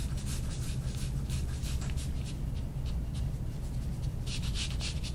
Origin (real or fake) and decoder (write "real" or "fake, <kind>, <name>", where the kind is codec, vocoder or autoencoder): real